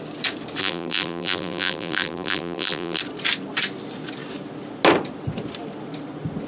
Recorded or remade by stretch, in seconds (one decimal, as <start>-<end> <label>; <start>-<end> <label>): 0.0-0.6 recorded; 0.6-3.0 remade; 3.0-6.5 recorded